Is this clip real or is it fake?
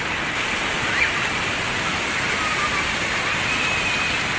real